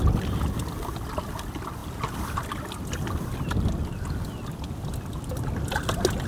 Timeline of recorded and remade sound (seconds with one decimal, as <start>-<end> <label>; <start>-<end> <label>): 0.0-6.3 recorded